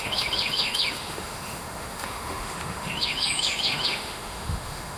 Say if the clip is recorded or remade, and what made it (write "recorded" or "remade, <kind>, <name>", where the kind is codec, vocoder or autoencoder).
remade, autoencoder, DAC-VAE